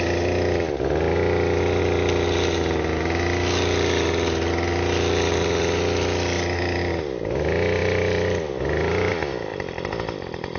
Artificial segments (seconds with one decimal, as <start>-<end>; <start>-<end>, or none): 7.8-9.1